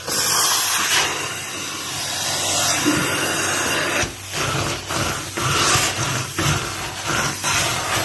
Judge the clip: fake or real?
real